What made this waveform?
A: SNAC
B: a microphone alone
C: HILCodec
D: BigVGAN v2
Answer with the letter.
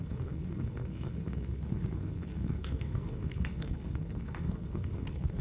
A